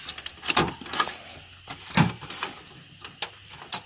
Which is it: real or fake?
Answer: real